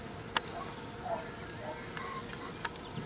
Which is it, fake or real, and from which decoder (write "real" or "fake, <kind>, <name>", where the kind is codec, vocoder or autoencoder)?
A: real